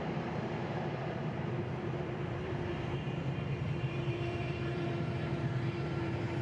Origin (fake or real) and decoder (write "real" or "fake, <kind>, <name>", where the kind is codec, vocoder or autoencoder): fake, vocoder, BigVGAN v2